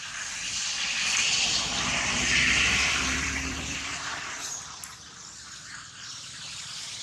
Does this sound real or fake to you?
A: fake